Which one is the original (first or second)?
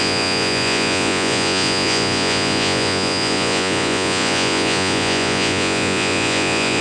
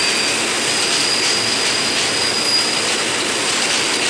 second